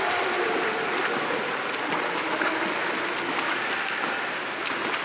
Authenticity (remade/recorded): recorded